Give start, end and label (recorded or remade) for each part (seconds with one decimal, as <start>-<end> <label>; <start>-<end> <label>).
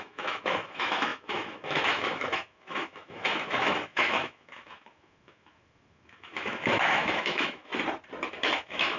0.0-7.7 remade; 7.7-8.3 recorded; 8.3-9.0 remade